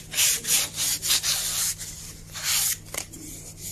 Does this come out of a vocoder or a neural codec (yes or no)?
no